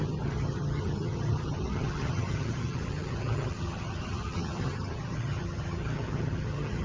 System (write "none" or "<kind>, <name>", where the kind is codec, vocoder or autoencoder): vocoder, HiFi-GAN